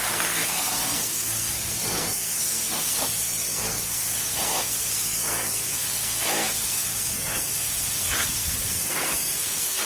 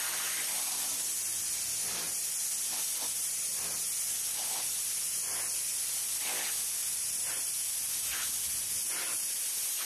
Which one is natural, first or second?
second